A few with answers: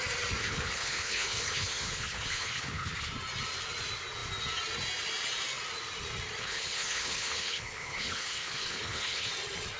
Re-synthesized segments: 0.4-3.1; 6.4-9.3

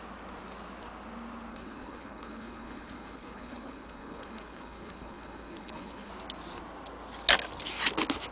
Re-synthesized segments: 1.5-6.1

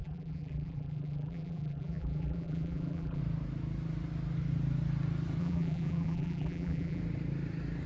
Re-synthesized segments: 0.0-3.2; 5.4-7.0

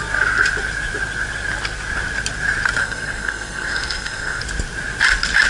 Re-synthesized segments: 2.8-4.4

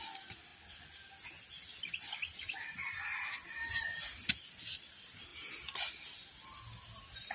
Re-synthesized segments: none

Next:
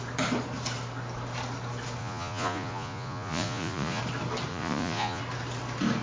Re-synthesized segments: 2.0-4.0; 4.5-5.2

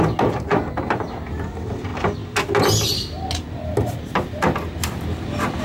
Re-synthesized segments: none

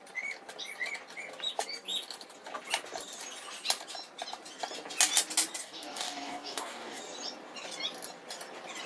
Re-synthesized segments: 5.6-7.0